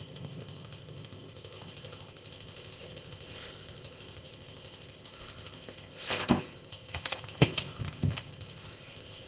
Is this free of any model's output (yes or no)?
no